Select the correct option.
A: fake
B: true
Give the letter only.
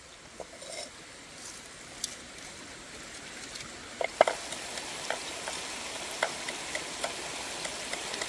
B